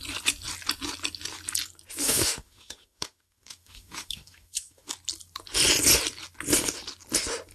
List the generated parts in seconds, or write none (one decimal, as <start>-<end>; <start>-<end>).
2.0-4.9